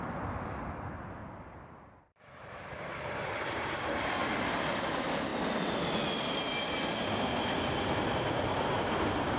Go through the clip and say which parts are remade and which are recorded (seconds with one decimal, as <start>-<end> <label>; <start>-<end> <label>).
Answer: 0.0-1.2 remade; 1.2-2.0 recorded; 2.0-5.3 remade; 5.3-8.2 recorded; 8.2-9.4 remade

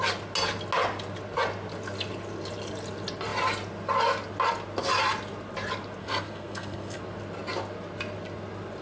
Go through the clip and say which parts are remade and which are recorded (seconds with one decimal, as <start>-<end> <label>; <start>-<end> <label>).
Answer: 0.0-6.0 recorded; 6.0-7.0 remade; 7.0-8.8 recorded

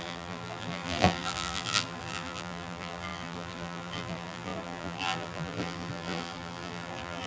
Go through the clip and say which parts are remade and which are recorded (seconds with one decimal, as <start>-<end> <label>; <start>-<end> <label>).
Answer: 0.0-7.3 remade

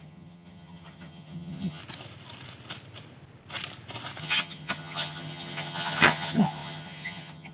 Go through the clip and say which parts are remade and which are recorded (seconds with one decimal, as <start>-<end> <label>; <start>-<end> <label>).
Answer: 0.0-1.8 remade; 1.8-4.2 recorded; 4.2-7.5 remade

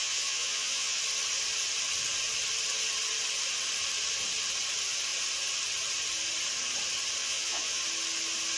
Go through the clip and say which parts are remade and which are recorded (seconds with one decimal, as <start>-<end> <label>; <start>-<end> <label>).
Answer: 0.0-1.0 remade; 1.0-7.2 recorded; 7.2-7.8 remade; 7.8-8.6 recorded